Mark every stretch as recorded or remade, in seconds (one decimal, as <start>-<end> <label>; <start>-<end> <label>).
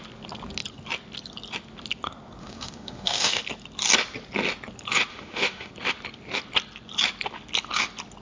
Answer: 0.0-2.4 recorded; 2.4-3.4 remade; 3.4-5.1 recorded; 5.1-5.7 remade; 5.7-8.2 recorded